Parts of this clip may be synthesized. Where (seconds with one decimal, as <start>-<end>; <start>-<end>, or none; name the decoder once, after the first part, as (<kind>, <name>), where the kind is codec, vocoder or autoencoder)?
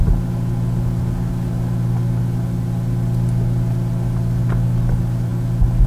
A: none